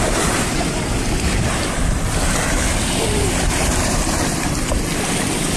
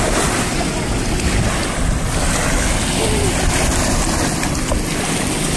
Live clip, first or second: second